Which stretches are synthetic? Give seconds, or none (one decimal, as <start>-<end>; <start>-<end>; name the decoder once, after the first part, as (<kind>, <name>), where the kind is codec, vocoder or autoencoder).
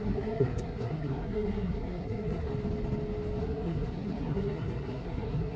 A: 0.0-2.5 (codec, SNAC); 3.4-5.6